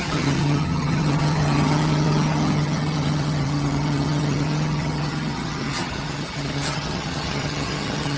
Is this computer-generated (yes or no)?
yes